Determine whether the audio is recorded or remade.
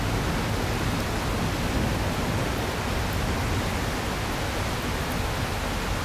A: recorded